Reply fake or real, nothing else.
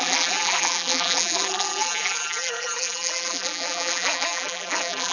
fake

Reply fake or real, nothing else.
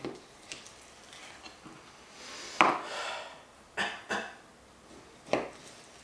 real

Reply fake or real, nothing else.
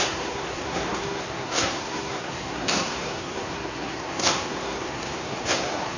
fake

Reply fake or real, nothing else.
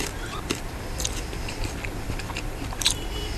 fake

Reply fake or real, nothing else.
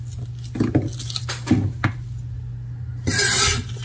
real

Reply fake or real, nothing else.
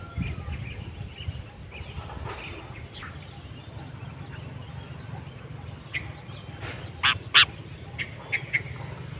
real